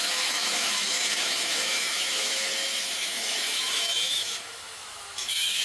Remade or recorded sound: remade